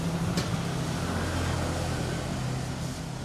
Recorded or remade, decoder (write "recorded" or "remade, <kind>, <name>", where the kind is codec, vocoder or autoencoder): recorded